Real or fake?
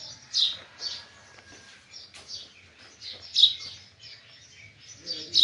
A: real